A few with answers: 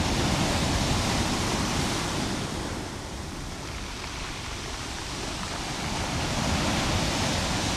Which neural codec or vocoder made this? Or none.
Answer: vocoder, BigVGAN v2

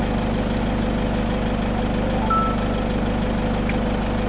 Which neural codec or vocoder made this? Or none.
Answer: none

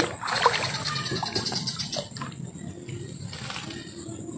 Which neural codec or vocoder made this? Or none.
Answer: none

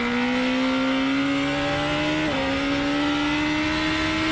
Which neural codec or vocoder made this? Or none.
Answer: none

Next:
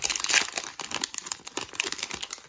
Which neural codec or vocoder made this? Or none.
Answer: none